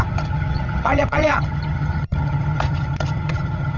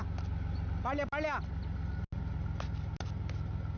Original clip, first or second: second